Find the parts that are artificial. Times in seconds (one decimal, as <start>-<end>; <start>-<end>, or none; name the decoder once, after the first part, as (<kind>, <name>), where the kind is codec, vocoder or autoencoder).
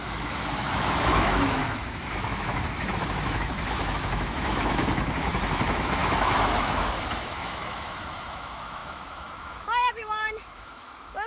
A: 0.0-11.3 (autoencoder, DAC-VAE)